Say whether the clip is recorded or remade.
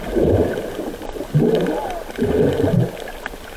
recorded